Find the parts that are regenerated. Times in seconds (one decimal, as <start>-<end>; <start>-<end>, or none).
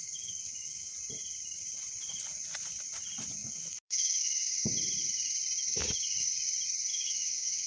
0.0-0.9; 3.4-4.7; 6.9-7.7